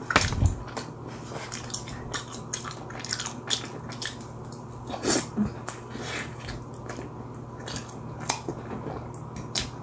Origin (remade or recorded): recorded